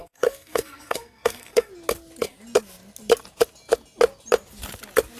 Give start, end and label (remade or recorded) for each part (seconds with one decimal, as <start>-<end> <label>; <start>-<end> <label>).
0.0-1.7 remade; 1.7-5.2 recorded